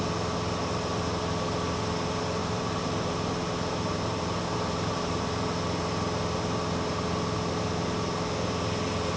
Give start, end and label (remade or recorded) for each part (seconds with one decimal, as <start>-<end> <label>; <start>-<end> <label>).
0.0-2.4 recorded; 2.4-5.2 remade; 5.2-9.2 recorded